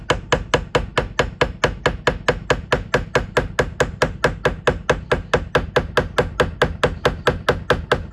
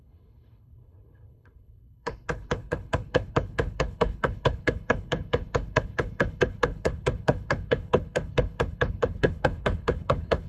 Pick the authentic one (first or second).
first